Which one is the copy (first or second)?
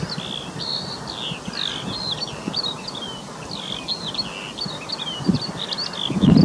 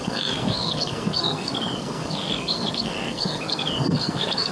second